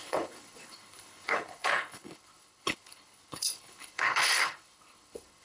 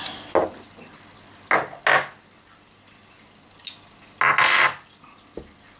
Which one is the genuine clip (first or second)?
second